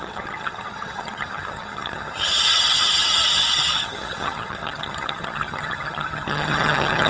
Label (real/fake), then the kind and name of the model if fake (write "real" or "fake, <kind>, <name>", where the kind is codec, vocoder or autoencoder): fake, vocoder, HiFi-GAN